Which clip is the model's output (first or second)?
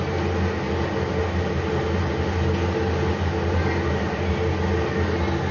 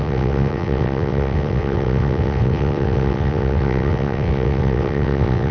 second